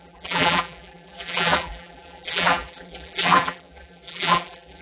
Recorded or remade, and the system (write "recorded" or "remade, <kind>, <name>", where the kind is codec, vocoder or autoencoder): remade, vocoder, BigVGAN v2